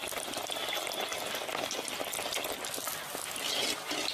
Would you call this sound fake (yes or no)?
no